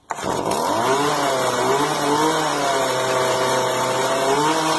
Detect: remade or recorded recorded